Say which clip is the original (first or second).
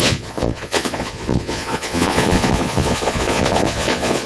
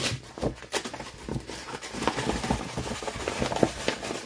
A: second